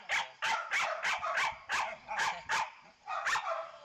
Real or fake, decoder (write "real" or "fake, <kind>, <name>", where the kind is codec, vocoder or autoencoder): fake, vocoder, BigVGAN v2